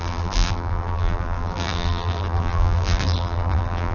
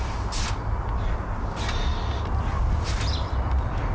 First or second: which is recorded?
second